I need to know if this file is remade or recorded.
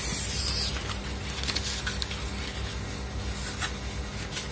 recorded